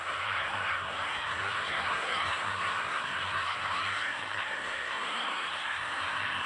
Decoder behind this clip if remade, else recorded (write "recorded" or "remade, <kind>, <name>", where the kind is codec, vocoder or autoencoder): remade, codec, SNAC